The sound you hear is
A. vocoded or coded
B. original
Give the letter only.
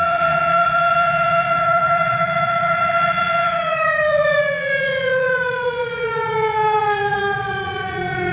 A